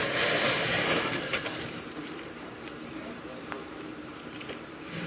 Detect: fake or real fake